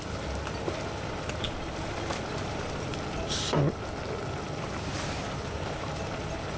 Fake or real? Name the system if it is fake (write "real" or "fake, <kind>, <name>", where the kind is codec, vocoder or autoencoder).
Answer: fake, vocoder, BigVGAN v2